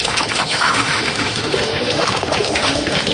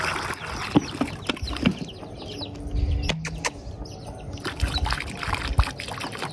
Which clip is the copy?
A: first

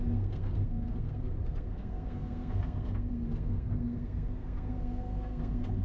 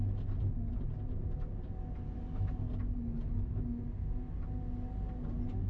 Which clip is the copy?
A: first